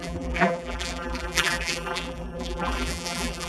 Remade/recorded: remade